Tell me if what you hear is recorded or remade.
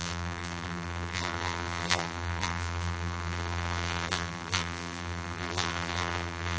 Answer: remade